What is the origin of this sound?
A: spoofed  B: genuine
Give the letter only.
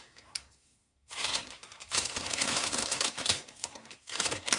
A